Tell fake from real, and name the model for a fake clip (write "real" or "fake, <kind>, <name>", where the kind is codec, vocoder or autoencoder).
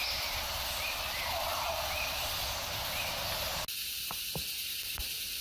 real